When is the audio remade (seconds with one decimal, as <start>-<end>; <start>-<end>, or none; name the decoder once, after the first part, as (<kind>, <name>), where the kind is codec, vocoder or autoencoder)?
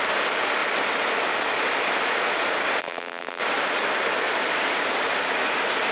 2.8-3.4 (vocoder, BigVGAN v2)